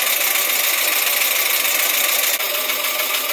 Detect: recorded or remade recorded